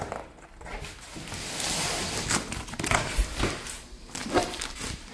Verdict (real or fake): real